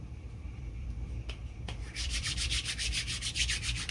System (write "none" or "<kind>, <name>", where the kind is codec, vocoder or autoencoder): vocoder, BigVGAN v2